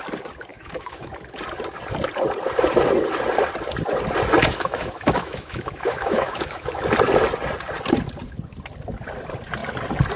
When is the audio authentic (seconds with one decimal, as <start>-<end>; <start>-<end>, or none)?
0.0-0.5; 1.1-4.4; 6.8-10.2

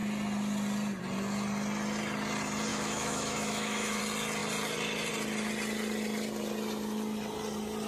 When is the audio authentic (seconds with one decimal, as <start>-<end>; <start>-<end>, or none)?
0.0-2.7; 4.0-7.9

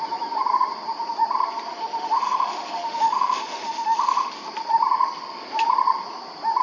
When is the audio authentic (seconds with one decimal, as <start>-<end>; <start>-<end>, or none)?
0.0-1.7; 4.3-6.6

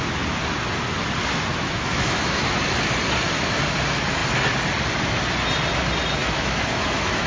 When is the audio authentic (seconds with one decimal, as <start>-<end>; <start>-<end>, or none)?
0.0-1.5; 2.4-6.2

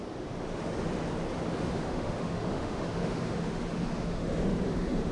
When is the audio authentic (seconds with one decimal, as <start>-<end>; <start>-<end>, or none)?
0.0-1.6

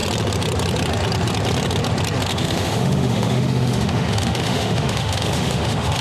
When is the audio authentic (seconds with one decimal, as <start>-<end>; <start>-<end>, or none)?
0.0-2.3